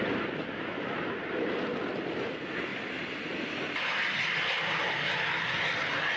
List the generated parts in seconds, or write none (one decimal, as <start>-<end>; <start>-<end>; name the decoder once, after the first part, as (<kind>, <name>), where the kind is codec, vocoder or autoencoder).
2.7-3.9 (vocoder, BigVGAN v2)